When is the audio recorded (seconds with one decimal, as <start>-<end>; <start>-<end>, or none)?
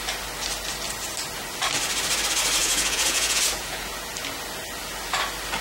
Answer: 0.0-2.6; 4.1-5.6